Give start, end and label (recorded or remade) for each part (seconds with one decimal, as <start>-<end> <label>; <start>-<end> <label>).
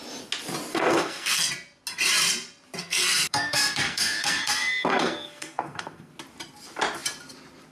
0.0-0.7 recorded; 0.7-1.5 remade; 1.5-2.8 recorded; 2.8-6.1 remade; 6.1-7.7 recorded